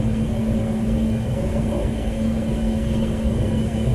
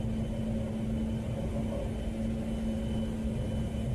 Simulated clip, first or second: first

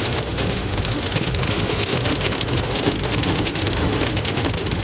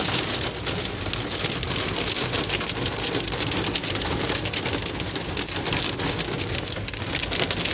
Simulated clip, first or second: first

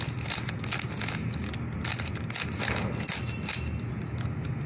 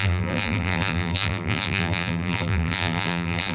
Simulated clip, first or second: second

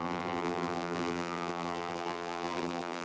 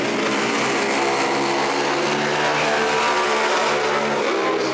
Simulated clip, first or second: first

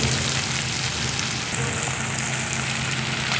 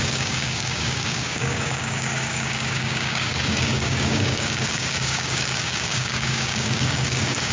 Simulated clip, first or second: second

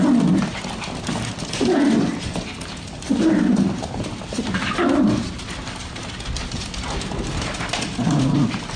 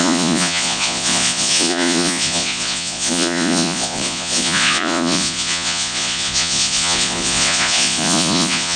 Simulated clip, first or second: second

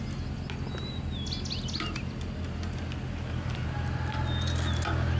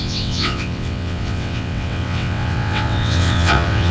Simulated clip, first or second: second